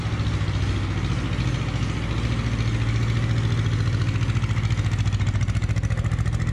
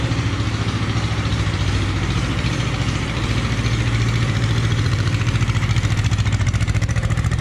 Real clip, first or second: first